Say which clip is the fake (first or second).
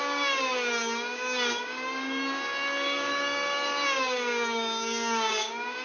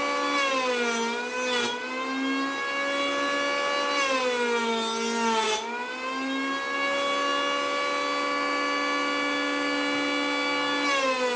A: first